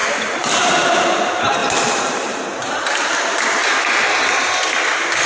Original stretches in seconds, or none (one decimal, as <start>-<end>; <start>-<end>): 0.0-1.6; 2.7-5.3